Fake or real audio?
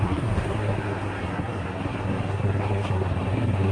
fake